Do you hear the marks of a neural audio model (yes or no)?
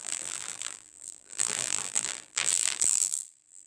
yes